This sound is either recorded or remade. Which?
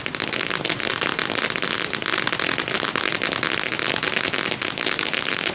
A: recorded